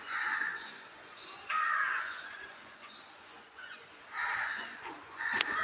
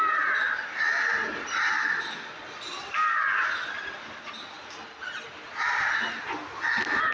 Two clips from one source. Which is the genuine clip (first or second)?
second